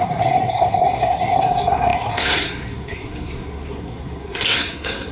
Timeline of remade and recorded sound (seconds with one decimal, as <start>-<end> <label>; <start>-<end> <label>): 0.0-5.1 remade